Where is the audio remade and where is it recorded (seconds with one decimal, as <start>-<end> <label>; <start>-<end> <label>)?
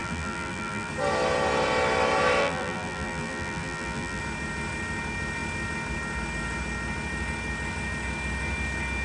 0.0-0.9 remade; 0.9-2.4 recorded; 2.4-4.2 remade; 4.2-9.0 recorded